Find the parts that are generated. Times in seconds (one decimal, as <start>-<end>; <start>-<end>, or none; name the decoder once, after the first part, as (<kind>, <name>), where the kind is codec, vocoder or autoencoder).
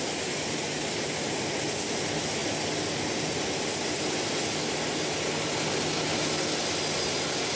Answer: none